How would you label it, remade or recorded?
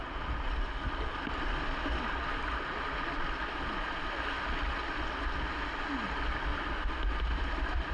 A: recorded